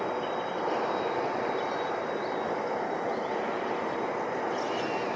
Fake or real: real